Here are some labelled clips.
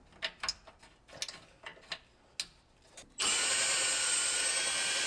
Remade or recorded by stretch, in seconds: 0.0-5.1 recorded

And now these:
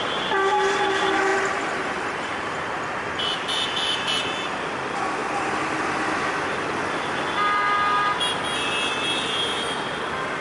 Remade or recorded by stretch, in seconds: 0.0-1.3 recorded; 1.3-2.8 remade; 2.8-10.4 recorded

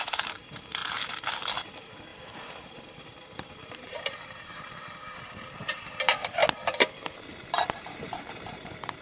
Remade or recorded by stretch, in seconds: 0.0-0.8 remade; 0.8-1.6 recorded; 1.6-6.4 remade; 6.4-7.7 recorded; 7.7-9.0 remade